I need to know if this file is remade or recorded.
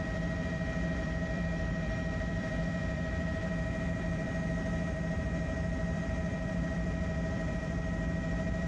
remade